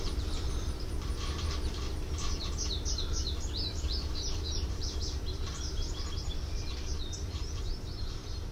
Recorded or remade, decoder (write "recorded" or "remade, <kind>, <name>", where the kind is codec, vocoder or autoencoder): remade, vocoder, BigVGAN v2